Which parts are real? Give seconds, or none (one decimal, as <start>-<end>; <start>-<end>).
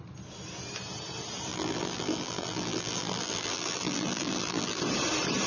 0.0-1.5; 4.8-5.5